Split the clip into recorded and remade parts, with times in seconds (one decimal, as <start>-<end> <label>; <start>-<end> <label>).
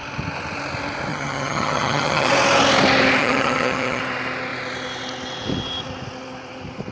0.0-1.1 recorded; 1.1-2.3 remade; 2.3-3.2 recorded; 3.2-4.0 remade; 4.0-6.9 recorded